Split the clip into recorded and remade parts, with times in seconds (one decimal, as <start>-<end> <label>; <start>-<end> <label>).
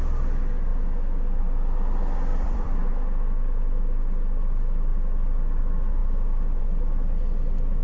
0.0-2.3 recorded; 2.3-2.9 remade; 2.9-7.8 recorded